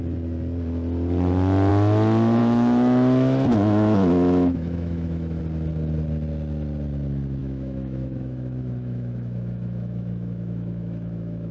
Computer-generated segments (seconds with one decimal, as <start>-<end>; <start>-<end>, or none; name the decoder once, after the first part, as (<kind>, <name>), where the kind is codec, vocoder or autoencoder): 2.4-5.4 (autoencoder, DAC-VAE); 7.4-11.5